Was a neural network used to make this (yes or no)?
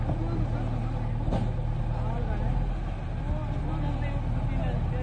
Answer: no